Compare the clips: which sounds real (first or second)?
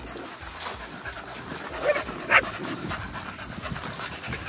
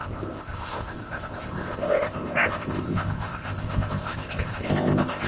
first